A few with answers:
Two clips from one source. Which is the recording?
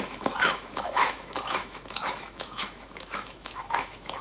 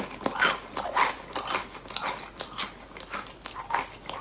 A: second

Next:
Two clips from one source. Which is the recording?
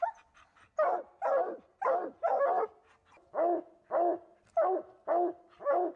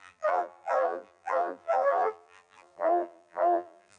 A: first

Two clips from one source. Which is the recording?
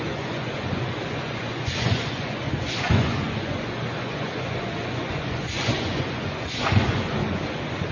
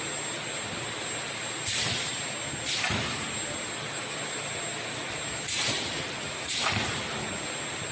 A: second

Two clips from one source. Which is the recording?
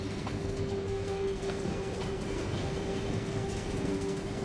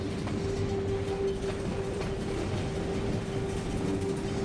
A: second